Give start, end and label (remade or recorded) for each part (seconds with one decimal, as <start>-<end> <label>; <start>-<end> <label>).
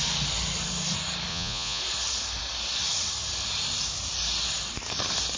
0.0-1.3 recorded; 1.3-1.8 remade; 1.8-5.4 recorded